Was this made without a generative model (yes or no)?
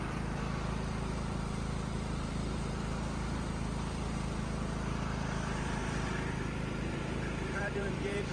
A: no